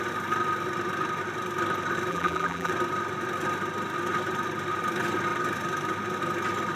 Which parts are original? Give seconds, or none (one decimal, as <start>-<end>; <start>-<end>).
0.0-2.1; 2.7-6.8